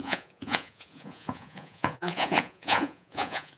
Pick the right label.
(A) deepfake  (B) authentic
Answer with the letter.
A